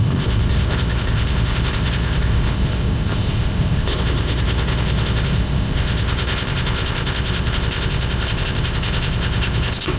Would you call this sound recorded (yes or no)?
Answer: no